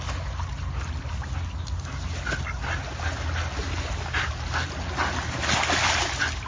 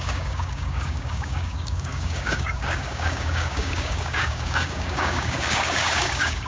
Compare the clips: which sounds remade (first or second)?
second